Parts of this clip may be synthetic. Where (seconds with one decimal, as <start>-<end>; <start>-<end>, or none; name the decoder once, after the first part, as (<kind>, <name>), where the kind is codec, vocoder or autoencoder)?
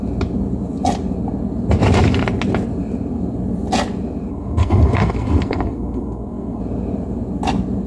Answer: 4.3-6.6 (codec, SNAC)